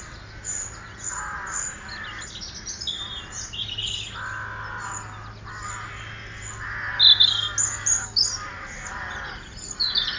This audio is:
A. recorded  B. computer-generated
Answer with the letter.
A